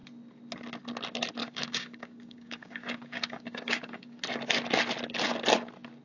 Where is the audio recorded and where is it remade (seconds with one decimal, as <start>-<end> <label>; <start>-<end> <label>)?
0.0-1.4 recorded; 1.4-4.2 remade; 4.2-6.0 recorded